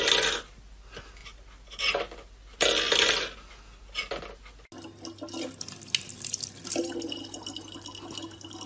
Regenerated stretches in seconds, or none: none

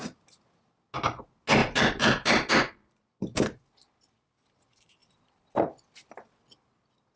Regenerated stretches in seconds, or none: 1.6-2.5 (vocoder, BigVGAN v2)

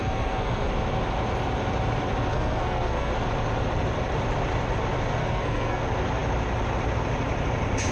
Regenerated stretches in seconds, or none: 0.0-0.7 (codec, SNAC); 2.3-3.1; 5.2-5.8

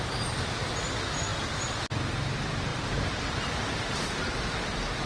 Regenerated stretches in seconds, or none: 2.7-4.3 (vocoder, BigVGAN v2)